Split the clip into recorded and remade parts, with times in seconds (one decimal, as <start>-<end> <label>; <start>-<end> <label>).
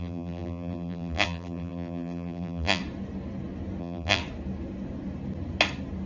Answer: 0.0-2.8 remade; 2.8-3.8 recorded; 3.8-4.2 remade; 4.2-6.1 recorded